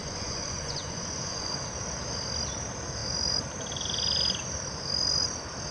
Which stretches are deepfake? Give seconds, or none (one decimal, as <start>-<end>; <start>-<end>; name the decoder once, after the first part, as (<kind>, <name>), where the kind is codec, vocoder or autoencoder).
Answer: 0.0-1.5 (vocoder, Vocos)